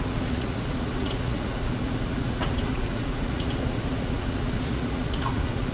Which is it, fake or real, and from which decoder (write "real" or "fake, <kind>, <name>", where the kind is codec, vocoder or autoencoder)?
fake, vocoder, Vocos